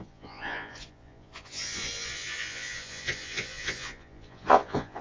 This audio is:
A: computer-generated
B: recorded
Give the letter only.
A